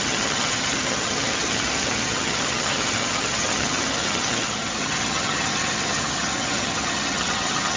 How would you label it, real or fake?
fake